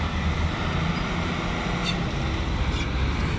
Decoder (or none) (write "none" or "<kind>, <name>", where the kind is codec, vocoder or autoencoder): none